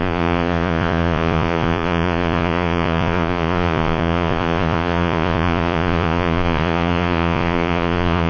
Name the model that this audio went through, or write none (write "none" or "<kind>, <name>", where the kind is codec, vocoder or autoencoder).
vocoder, Vocos